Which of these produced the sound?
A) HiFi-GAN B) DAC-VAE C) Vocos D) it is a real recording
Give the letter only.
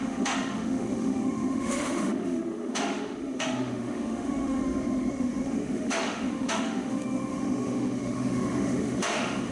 B